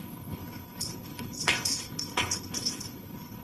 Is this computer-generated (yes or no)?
yes